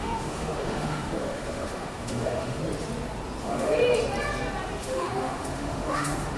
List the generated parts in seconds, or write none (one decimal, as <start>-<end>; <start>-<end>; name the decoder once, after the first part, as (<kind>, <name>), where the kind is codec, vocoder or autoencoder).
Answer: 0.0-2.6 (autoencoder, DAC-VAE); 3.4-3.8; 4.8-6.4